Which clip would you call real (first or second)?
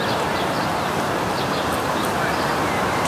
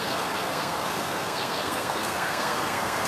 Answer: first